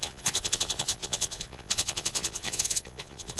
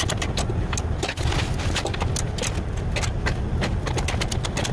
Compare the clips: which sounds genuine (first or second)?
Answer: second